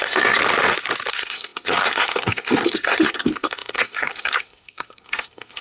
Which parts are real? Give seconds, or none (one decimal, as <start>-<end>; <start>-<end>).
0.4-1.1